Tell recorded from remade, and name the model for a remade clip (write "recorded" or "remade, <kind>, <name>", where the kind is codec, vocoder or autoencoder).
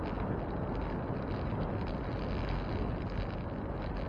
recorded